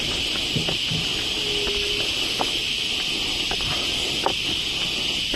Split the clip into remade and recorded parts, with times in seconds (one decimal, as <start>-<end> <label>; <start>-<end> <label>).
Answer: 0.0-5.4 recorded